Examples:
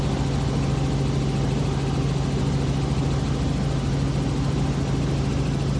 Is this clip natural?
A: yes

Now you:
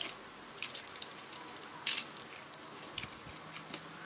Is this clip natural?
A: yes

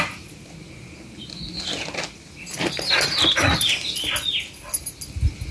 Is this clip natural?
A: yes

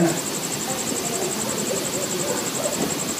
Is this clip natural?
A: yes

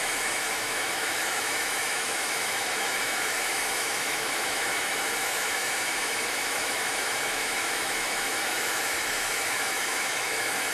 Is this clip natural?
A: no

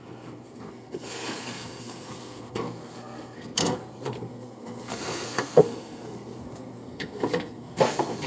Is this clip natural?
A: no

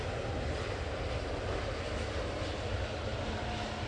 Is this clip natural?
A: yes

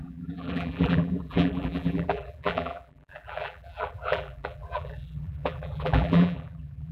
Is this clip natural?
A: no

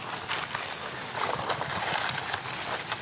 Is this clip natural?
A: yes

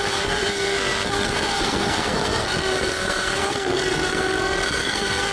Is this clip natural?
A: no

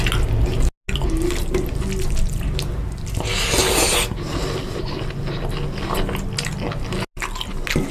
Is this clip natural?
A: yes